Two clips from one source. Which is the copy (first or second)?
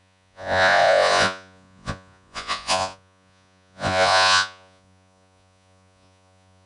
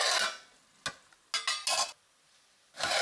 first